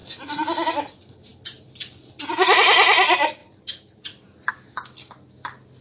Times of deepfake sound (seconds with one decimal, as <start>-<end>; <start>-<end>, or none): 3.4-4.5